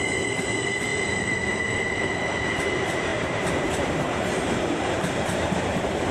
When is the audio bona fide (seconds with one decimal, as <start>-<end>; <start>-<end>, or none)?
none